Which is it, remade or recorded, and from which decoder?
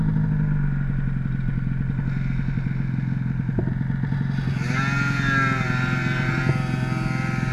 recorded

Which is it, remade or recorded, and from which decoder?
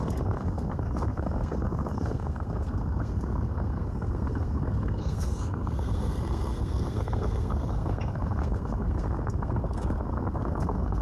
remade, codec, SNAC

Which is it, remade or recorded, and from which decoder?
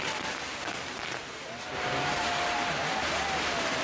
recorded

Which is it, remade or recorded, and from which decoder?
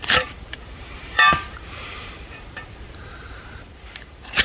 remade, vocoder, BigVGAN v2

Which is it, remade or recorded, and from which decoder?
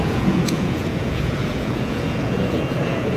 remade, vocoder, Vocos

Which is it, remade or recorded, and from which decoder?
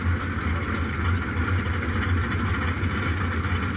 recorded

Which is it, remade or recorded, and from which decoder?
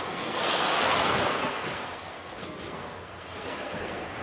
remade, codec, SNAC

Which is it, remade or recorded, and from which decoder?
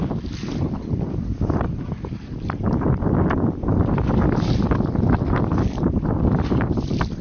recorded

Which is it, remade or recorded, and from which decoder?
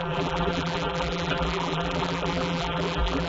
remade, vocoder, BigVGAN v2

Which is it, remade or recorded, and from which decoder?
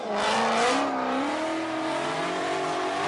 recorded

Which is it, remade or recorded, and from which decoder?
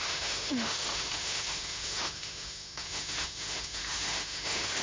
remade, autoencoder, DAC-VAE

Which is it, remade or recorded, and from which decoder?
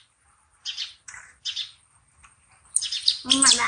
recorded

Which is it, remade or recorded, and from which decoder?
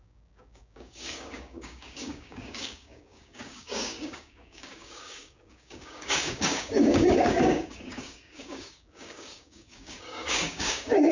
remade, codec, DAC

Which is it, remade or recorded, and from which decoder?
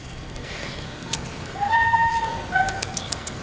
remade, codec, SNAC